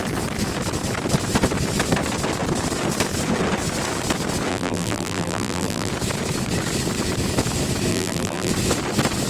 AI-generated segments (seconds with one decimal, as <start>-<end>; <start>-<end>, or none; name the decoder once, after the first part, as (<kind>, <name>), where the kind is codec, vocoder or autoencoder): 4.5-5.9 (vocoder, BigVGAN v2); 7.9-8.5